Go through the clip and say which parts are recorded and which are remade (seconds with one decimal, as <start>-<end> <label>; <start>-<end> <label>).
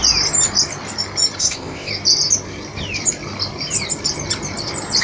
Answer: 0.0-1.4 recorded; 1.4-1.9 remade; 1.9-5.0 recorded